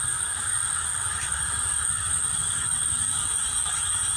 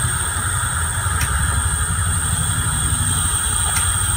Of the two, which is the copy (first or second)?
first